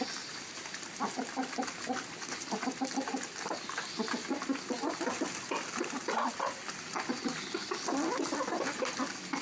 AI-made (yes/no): no